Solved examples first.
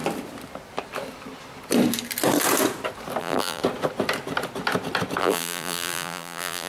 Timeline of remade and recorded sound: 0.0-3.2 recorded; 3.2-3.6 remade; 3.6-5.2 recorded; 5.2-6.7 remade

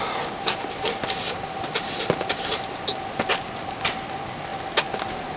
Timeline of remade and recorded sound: 0.0-5.4 recorded